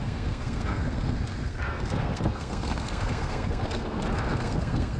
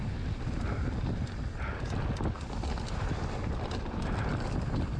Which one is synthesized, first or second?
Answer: first